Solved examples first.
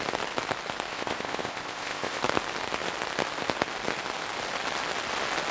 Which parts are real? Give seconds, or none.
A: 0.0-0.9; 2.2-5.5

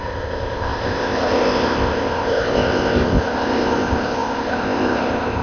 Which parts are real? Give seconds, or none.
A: none